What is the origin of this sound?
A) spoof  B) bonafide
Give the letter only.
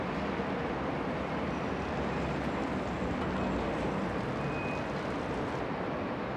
B